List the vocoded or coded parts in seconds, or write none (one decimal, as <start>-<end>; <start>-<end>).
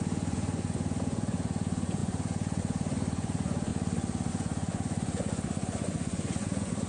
0.0-3.7; 4.3-6.9